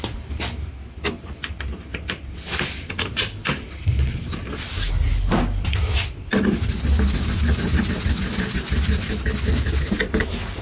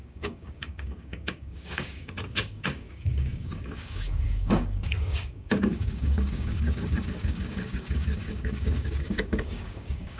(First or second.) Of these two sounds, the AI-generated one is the second